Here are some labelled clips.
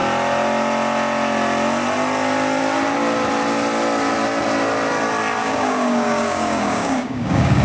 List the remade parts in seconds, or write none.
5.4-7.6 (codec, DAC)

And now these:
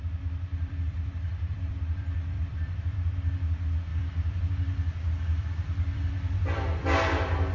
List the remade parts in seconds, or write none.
0.5-3.4 (vocoder, BigVGAN v2); 3.9-4.5; 5.3-6.4

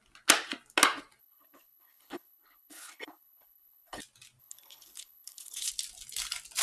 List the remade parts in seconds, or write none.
1.2-4.0 (codec, HILCodec); 4.4-5.7

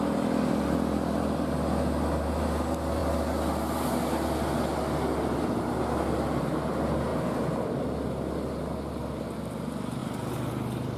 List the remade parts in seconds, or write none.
none

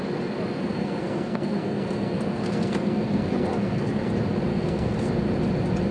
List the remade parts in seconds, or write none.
0.6-4.1 (codec, SNAC); 4.5-5.1

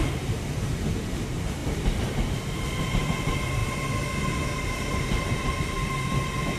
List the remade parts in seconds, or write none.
0.0-1.6 (vocoder, BigVGAN v2); 2.8-3.6; 4.5-6.6

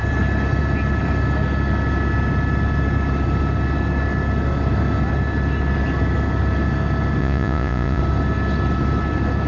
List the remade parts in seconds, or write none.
7.2-8.0 (vocoder, Vocos)